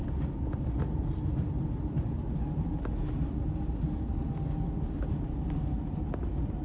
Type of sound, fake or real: real